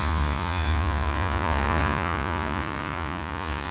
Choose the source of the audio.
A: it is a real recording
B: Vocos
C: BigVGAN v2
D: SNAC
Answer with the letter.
B